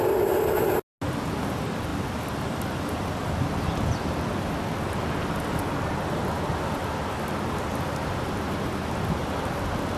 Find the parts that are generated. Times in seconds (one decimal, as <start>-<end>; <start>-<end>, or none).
none